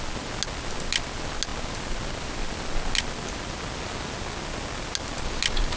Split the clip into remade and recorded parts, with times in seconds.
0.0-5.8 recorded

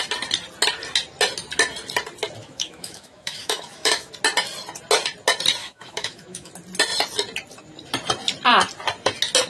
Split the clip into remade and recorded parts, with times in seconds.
0.0-2.4 recorded; 2.4-4.1 remade; 4.1-5.6 recorded; 5.6-6.5 remade; 6.5-9.5 recorded